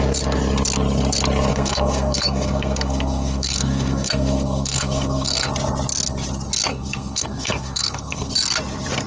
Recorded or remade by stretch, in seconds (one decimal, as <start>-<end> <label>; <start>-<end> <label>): 0.0-1.5 recorded; 1.5-5.5 remade; 5.5-6.7 recorded; 6.7-8.3 remade; 8.3-9.1 recorded